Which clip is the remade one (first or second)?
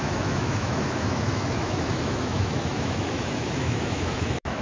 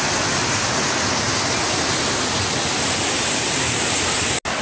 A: first